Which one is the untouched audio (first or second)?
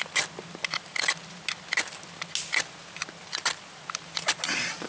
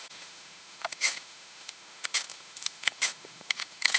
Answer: first